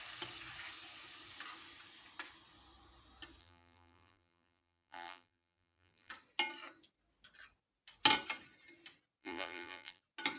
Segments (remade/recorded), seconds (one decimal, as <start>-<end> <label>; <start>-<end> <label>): 0.0-3.4 recorded; 3.4-6.1 remade; 6.1-9.2 recorded; 9.2-10.0 remade; 10.0-10.4 recorded